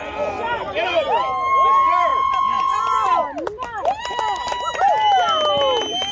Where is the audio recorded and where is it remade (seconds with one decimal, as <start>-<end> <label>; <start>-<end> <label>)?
0.0-6.1 recorded